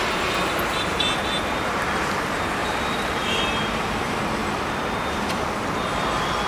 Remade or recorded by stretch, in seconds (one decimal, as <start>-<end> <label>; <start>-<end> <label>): 0.0-2.6 recorded; 2.6-3.4 remade; 3.4-6.5 recorded